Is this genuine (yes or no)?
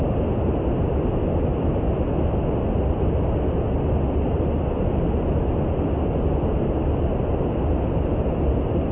yes